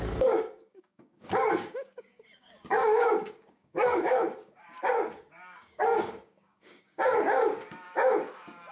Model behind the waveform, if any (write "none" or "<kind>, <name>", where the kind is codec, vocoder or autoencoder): codec, DAC